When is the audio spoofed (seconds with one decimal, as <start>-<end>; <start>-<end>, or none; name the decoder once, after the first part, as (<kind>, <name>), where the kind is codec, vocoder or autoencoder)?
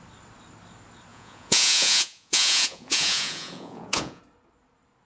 1.1-4.2 (vocoder, Vocos)